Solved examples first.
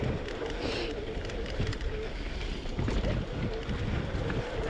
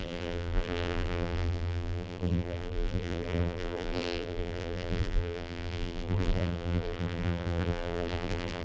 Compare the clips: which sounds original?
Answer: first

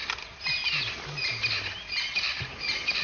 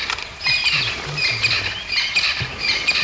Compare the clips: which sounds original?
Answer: first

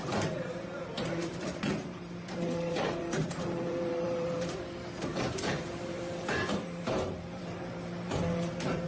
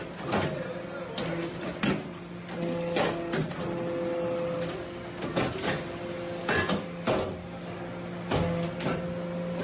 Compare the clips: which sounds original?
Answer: second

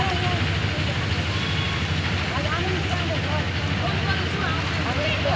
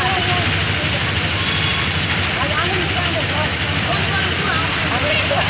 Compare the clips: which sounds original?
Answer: first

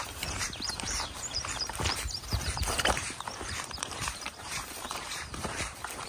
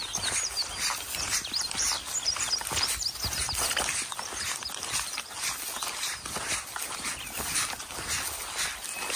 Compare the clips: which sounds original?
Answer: second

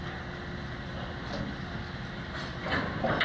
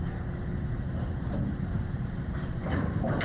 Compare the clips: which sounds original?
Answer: first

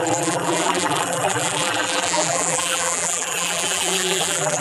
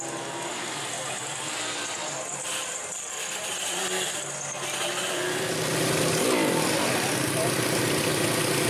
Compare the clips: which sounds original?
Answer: second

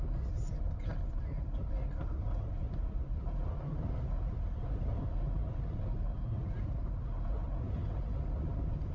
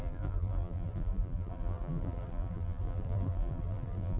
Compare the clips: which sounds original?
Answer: first